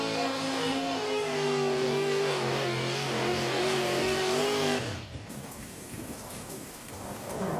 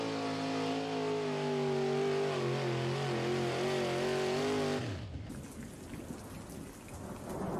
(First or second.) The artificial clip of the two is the first